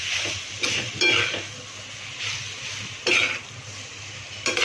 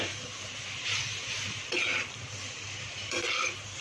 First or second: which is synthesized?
second